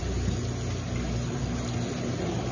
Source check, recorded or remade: recorded